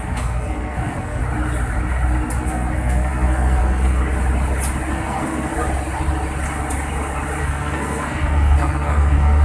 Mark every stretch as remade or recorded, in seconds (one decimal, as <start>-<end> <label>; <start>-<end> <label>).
0.0-1.2 remade; 1.2-2.4 recorded; 2.4-4.0 remade; 4.0-4.9 recorded; 4.9-5.5 remade; 5.5-7.4 recorded; 7.4-9.4 remade